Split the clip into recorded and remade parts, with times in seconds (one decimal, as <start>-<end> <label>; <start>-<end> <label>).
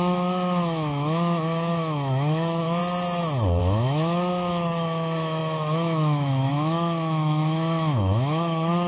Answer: 0.0-2.8 remade; 2.8-3.6 recorded; 3.6-8.9 remade